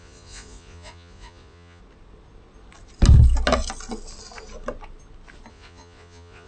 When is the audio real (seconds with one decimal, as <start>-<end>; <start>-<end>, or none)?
1.8-5.5